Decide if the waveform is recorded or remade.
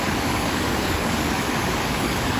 remade